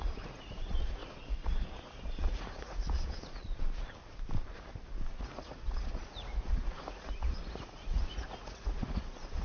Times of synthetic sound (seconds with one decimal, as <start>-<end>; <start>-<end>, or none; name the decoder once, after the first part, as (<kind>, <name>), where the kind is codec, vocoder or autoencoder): 0.0-3.4 (vocoder, Vocos); 5.2-9.4